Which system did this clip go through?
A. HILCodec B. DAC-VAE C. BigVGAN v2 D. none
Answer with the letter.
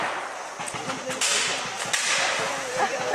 D